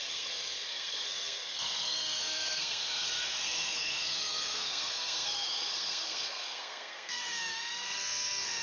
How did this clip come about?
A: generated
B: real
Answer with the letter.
A